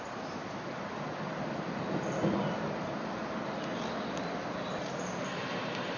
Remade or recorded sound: recorded